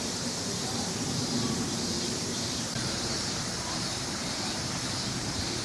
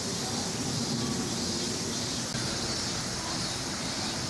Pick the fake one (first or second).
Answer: first